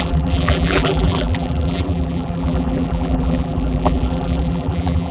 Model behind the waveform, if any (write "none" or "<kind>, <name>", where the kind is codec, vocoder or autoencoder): vocoder, BigVGAN v2